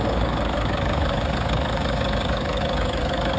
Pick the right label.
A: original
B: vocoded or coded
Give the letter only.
B